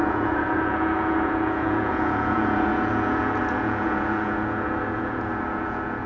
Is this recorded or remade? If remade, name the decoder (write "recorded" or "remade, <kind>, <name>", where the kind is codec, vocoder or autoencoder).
remade, vocoder, Vocos